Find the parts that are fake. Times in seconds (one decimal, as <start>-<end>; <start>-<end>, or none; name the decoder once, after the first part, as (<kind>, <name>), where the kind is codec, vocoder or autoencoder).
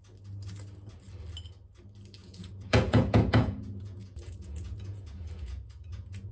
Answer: 2.2-6.3 (vocoder, Vocos)